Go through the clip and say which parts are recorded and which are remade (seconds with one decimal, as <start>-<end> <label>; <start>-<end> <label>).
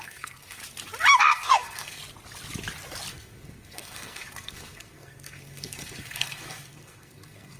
0.0-0.6 remade; 0.6-1.2 recorded; 1.2-2.0 remade; 2.0-3.1 recorded; 3.1-7.6 remade